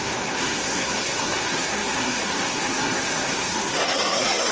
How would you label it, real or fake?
fake